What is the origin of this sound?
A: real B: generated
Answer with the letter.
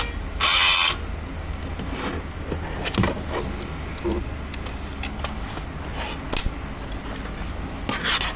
A